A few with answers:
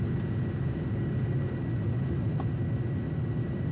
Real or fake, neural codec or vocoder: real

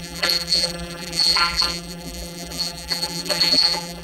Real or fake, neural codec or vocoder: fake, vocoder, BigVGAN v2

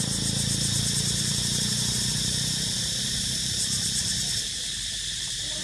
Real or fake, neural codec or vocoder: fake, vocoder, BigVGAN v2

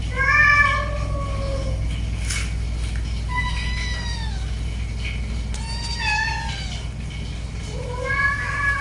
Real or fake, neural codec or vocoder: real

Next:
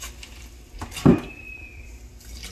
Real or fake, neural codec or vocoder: real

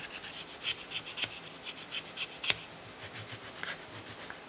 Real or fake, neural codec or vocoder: real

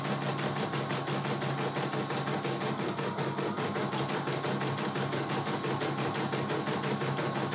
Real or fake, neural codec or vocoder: real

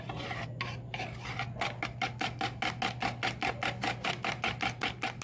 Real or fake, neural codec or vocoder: real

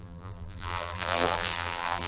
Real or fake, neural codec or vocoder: fake, vocoder, BigVGAN v2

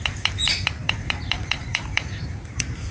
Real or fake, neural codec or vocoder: fake, vocoder, BigVGAN v2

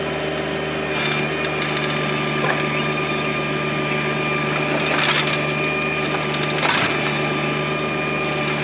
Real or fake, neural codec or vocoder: real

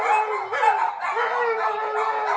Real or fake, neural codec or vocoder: real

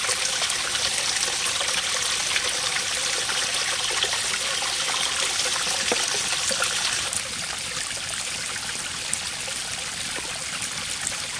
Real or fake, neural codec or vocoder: real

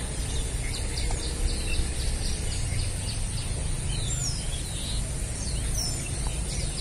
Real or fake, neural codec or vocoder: real